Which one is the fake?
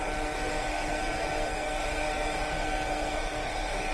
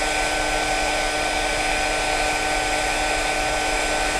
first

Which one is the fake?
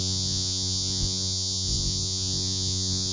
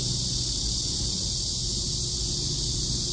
first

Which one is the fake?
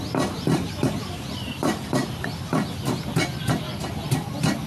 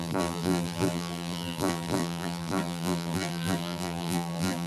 second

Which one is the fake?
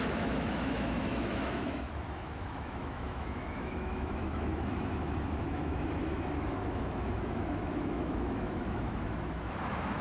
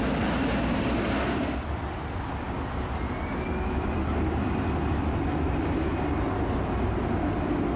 first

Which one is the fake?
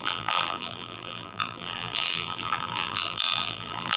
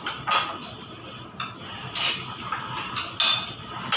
first